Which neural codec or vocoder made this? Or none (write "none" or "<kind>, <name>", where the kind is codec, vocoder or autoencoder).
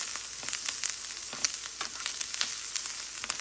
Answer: none